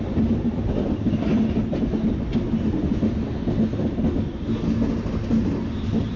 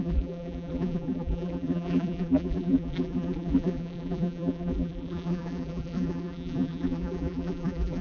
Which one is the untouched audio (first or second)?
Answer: first